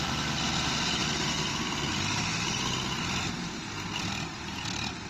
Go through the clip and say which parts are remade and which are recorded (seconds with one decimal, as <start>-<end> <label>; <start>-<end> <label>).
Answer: 0.0-5.1 recorded